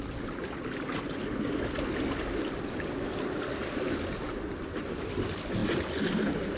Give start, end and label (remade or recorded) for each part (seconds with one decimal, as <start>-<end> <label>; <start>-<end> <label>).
0.0-6.6 recorded